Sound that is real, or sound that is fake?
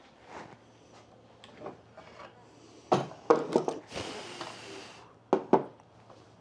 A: real